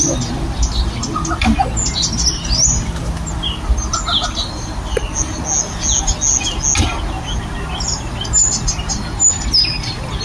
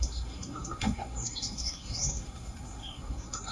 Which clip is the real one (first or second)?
first